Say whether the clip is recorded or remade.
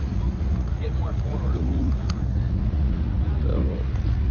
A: remade